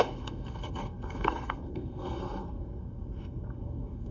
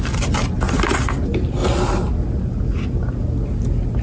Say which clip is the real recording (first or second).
second